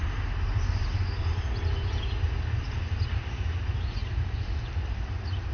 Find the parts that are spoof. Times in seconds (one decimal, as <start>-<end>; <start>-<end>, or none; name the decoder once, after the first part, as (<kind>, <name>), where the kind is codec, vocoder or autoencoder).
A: 0.0-1.4 (vocoder, BigVGAN v2); 4.0-4.5